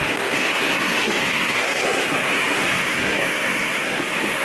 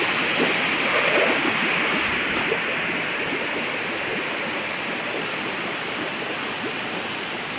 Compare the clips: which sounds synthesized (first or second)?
first